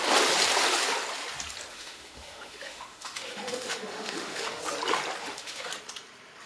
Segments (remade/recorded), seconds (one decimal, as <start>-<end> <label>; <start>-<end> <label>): 0.0-1.7 recorded; 1.7-4.6 remade; 4.6-5.2 recorded; 5.2-5.7 remade; 5.7-6.5 recorded